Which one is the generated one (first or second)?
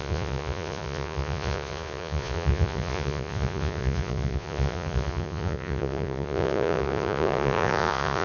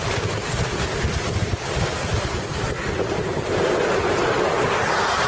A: first